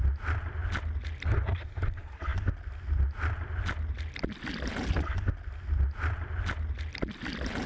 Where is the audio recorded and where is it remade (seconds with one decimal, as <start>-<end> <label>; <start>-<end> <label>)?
0.0-7.7 recorded